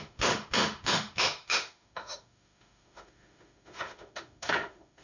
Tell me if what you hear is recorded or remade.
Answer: remade